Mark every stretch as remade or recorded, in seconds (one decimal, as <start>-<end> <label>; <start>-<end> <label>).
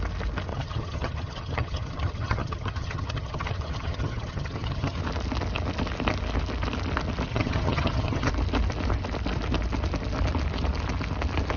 0.0-0.5 recorded; 0.5-5.0 remade; 5.0-7.3 recorded; 7.3-8.3 remade; 8.3-11.6 recorded